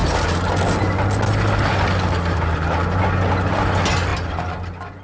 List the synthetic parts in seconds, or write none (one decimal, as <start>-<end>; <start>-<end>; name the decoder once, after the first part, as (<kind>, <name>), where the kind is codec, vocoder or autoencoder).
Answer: none